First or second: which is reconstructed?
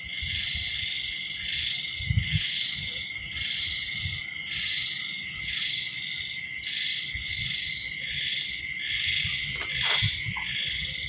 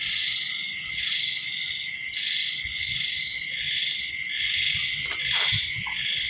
second